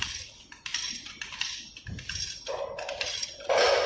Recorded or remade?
recorded